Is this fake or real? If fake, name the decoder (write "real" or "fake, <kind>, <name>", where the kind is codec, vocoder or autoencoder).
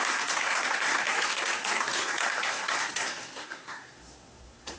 fake, codec, SNAC